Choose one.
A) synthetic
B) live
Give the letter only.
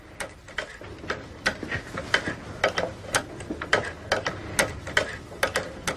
B